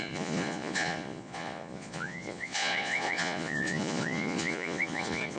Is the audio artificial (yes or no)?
yes